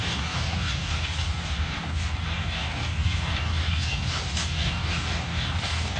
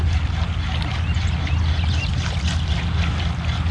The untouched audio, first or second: second